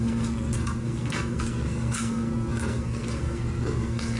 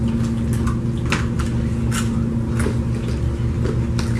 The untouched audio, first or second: second